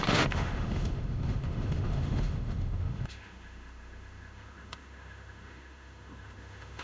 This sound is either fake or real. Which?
fake